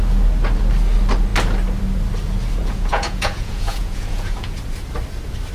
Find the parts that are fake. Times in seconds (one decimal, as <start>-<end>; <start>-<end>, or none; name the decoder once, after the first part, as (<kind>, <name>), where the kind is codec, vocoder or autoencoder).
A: 2.6-4.6 (vocoder, Vocos)